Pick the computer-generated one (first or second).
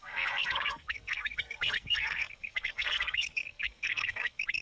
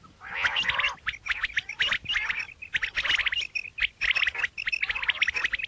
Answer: first